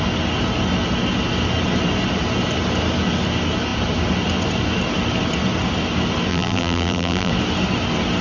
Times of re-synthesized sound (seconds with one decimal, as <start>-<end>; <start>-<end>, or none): 6.3-7.3